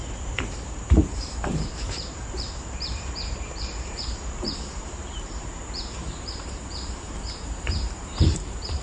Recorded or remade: remade